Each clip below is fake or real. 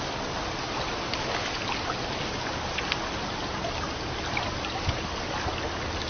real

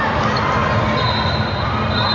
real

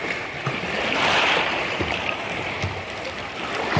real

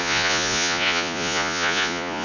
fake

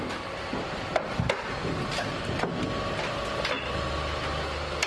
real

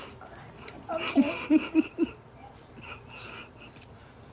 real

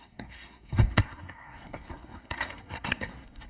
fake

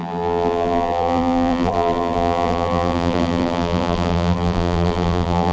fake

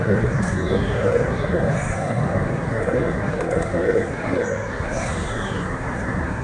fake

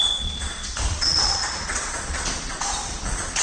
fake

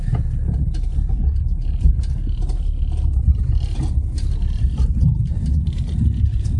real